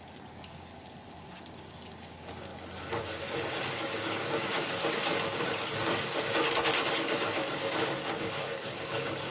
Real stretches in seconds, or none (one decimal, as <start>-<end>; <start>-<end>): 0.7-1.2; 2.5-3.0